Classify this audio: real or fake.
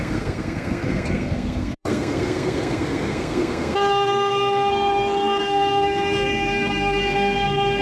fake